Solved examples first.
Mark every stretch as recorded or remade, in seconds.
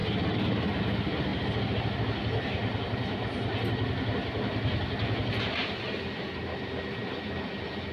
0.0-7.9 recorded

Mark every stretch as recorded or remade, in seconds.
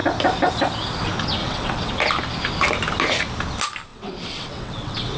0.0-1.4 recorded; 1.4-1.9 remade; 1.9-3.9 recorded; 3.9-5.2 remade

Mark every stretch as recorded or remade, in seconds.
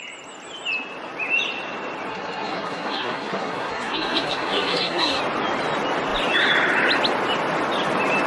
0.0-2.1 recorded; 2.1-5.2 remade; 5.2-8.3 recorded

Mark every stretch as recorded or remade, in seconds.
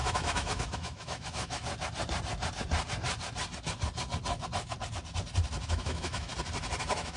0.0-1.6 remade; 1.6-5.6 recorded; 5.6-6.3 remade; 6.3-6.8 recorded; 6.8-7.2 remade